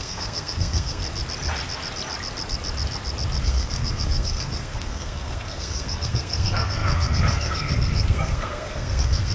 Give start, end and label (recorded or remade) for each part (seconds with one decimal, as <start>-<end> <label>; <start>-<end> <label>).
0.0-1.0 remade; 1.0-3.4 recorded; 3.4-9.3 remade